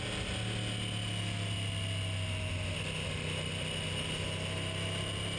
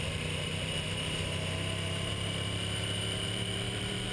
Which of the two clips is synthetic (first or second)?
second